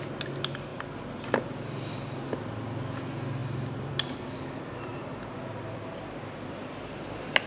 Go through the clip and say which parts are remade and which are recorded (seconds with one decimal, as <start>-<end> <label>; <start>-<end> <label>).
0.0-7.5 recorded